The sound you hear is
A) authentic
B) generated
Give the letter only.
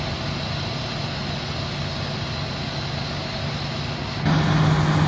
A